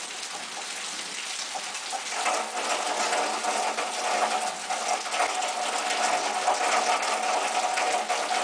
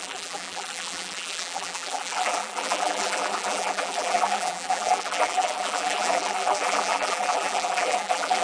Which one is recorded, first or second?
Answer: first